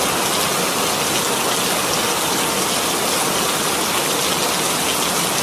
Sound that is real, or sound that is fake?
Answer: real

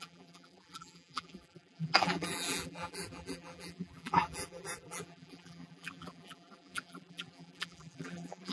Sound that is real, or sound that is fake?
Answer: fake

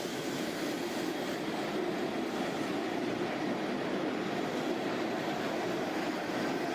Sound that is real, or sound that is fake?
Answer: real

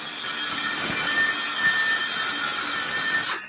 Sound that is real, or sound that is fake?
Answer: real